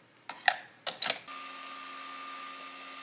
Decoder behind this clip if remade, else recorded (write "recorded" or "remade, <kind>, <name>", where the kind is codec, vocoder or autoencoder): recorded